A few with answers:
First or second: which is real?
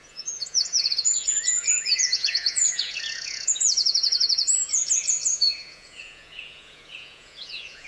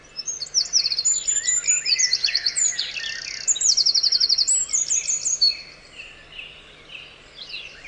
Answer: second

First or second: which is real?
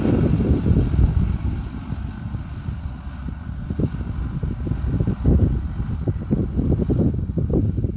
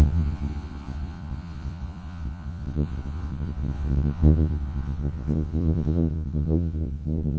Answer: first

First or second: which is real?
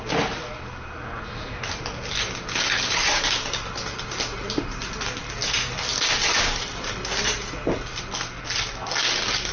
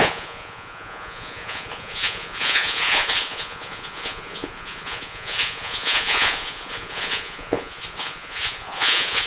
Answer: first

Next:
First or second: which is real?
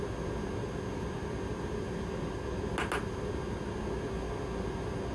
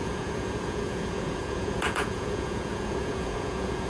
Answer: first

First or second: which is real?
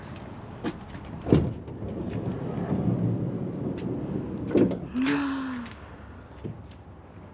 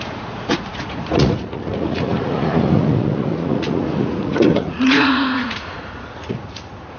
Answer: first